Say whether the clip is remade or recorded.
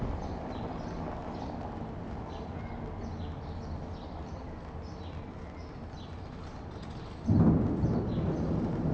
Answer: recorded